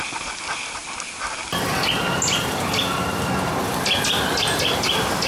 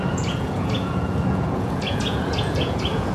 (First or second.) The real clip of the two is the first